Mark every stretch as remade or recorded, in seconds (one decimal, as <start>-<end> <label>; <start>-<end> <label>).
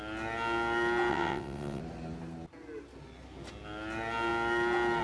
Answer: 0.0-1.1 recorded; 1.1-1.8 remade; 1.8-5.0 recorded